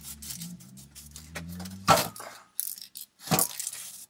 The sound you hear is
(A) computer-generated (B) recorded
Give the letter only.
B